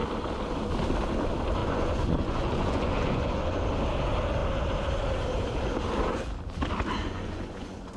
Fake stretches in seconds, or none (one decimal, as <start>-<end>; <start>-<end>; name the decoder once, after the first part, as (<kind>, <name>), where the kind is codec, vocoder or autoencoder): 1.6-3.6 (vocoder, Vocos); 7.0-8.0